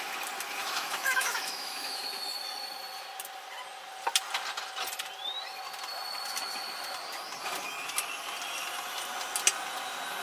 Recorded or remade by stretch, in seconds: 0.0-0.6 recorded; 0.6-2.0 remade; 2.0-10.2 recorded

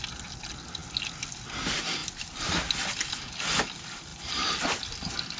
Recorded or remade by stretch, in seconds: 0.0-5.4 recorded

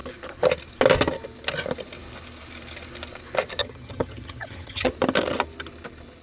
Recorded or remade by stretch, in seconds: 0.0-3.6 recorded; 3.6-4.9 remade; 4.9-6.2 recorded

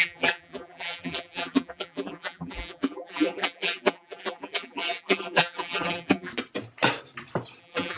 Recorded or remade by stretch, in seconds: 0.0-6.3 remade; 6.3-7.6 recorded; 7.6-8.0 remade

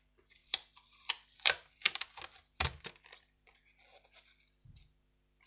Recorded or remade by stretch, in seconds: 0.0-0.4 recorded; 0.4-3.6 remade; 3.6-5.5 recorded

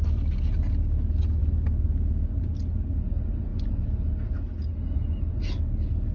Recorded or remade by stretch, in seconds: 0.0-6.1 recorded